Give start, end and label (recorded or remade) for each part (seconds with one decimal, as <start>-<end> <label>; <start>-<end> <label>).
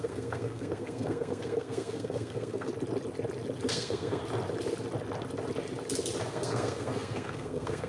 0.0-2.7 remade; 2.7-3.7 recorded; 3.7-4.2 remade; 4.2-6.3 recorded; 6.3-7.9 remade